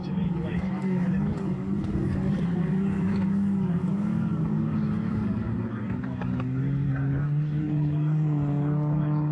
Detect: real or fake fake